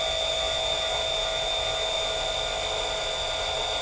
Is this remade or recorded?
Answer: recorded